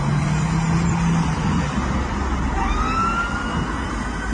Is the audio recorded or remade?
recorded